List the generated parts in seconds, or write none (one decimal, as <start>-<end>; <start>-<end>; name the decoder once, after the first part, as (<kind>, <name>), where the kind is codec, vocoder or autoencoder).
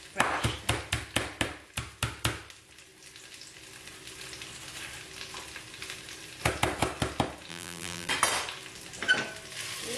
7.5-8.1 (vocoder, BigVGAN v2)